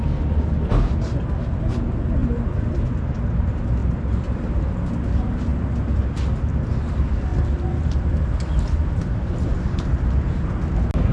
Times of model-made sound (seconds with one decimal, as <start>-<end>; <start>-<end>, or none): 3.8-4.6; 5.5-6.7